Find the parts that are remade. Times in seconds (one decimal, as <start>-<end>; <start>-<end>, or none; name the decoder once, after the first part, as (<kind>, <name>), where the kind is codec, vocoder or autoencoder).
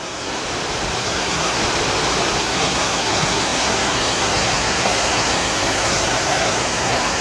0.0-0.4 (codec, SNAC); 1.0-1.6; 2.4-7.2